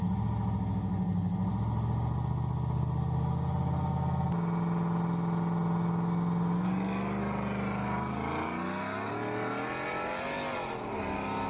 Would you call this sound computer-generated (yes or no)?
no